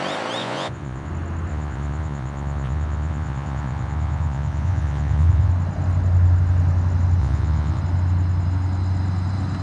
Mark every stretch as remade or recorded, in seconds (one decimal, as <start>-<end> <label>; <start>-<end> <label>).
0.0-0.4 recorded; 0.4-1.1 remade; 1.1-1.5 recorded; 1.5-5.5 remade; 5.5-7.2 recorded; 7.2-7.8 remade; 7.8-9.6 recorded